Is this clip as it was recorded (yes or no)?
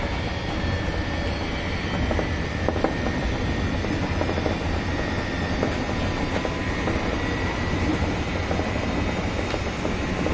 yes